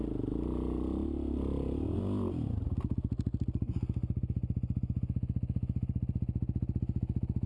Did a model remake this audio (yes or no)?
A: no